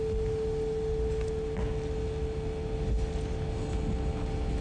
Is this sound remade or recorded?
recorded